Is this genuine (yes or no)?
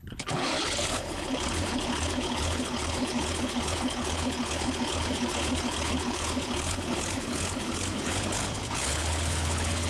no